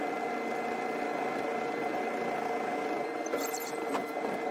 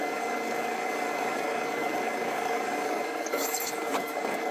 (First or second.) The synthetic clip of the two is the second